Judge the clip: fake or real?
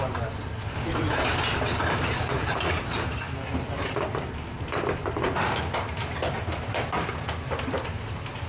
fake